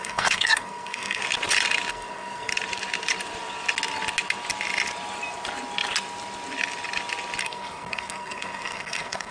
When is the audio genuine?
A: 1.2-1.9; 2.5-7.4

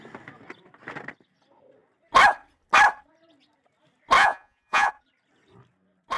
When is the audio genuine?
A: 0.0-4.2; 4.9-6.2

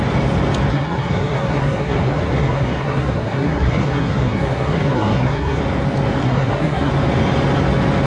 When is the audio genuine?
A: 0.0-0.7; 5.6-6.2; 6.9-8.1